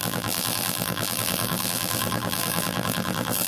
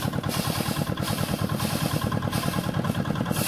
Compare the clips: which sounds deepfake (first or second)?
first